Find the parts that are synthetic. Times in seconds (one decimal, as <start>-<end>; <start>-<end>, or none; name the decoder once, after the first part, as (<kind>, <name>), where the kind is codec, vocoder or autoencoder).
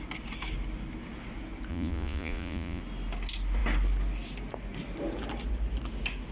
1.7-2.8 (vocoder, Vocos)